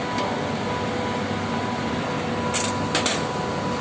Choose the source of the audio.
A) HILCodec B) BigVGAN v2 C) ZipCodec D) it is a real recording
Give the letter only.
D